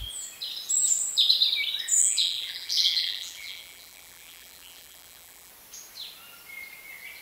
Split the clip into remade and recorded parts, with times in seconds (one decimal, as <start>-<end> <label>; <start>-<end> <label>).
0.0-2.0 recorded; 2.0-5.5 remade; 5.5-7.2 recorded